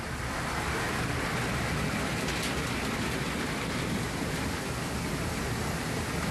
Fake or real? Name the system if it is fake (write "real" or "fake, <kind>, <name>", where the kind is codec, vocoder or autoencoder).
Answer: real